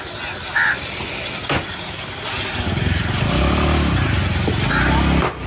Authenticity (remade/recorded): recorded